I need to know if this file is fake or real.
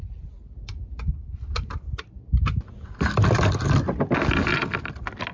real